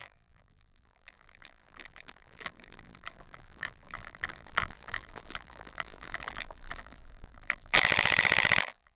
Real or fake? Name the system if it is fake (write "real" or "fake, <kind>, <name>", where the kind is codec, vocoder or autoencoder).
fake, vocoder, BigVGAN v2